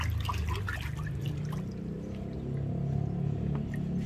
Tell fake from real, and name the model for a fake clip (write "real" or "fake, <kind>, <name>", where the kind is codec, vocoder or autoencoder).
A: real